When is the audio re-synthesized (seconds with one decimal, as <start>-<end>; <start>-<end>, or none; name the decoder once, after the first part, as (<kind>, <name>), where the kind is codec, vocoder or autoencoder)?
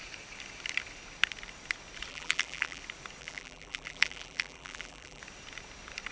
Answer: 2.1-2.8 (vocoder, BigVGAN v2); 3.2-5.2